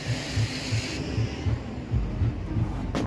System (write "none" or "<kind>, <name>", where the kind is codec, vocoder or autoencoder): none